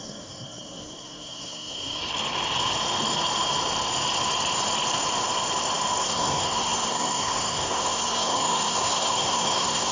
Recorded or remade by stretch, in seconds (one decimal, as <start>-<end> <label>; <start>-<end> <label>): 0.0-2.0 remade; 2.0-6.0 recorded; 6.0-9.9 remade